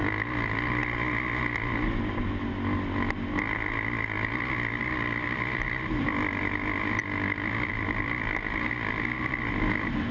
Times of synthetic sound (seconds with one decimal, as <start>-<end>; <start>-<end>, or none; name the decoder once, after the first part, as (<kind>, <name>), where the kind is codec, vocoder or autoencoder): 0.0-0.8 (vocoder, BigVGAN v2); 4.8-10.1